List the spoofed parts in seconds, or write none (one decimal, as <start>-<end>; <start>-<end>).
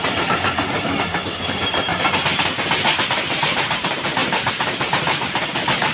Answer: 0.0-1.9; 3.1-5.9